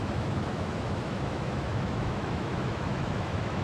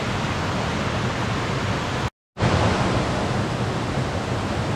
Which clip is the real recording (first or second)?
second